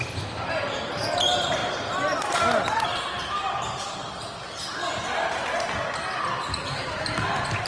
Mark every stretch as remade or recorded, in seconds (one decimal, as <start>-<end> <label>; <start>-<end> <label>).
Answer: 0.0-1.6 remade; 1.6-6.2 recorded; 6.2-7.7 remade